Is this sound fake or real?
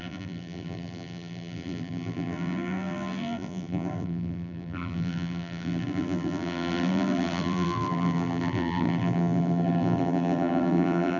fake